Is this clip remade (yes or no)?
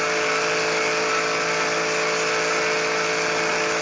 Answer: no